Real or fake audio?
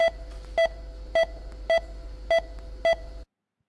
real